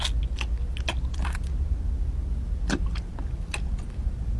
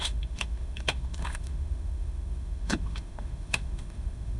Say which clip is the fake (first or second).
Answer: second